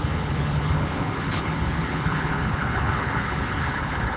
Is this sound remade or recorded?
remade